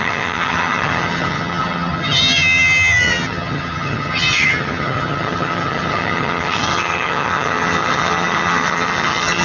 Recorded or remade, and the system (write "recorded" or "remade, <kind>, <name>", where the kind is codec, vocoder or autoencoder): remade, vocoder, HiFi-GAN